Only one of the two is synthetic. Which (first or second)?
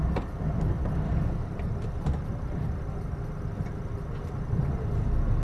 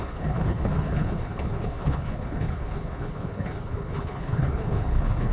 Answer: second